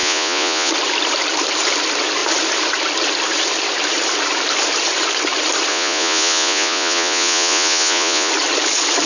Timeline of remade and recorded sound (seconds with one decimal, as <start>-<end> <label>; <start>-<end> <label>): 0.0-0.7 remade; 0.7-5.7 recorded; 5.7-8.3 remade; 8.3-9.1 recorded